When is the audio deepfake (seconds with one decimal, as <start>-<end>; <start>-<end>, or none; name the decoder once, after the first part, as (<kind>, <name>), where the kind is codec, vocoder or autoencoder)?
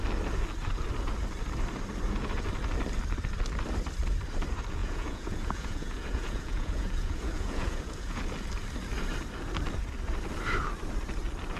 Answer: 4.8-8.2 (vocoder, Vocos)